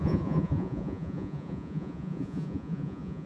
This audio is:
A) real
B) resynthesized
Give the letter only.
B